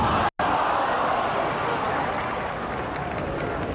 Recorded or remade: recorded